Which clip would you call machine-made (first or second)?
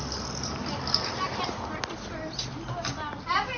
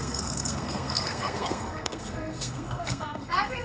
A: second